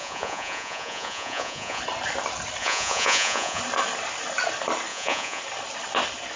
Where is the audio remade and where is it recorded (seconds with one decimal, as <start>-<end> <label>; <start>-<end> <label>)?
0.0-1.8 remade; 1.8-2.6 recorded; 2.6-3.6 remade; 3.6-4.9 recorded; 4.9-5.4 remade; 5.4-6.4 recorded